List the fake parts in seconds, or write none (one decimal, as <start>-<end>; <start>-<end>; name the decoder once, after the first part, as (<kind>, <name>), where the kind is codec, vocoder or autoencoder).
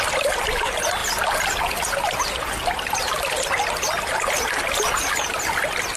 none